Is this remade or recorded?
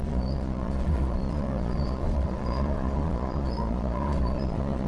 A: remade